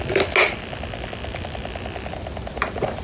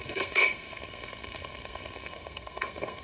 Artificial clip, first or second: second